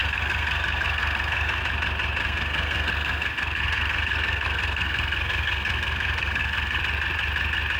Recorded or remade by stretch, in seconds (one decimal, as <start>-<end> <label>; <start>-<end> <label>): 0.0-1.6 remade; 1.6-2.2 recorded; 2.2-6.8 remade; 6.8-7.8 recorded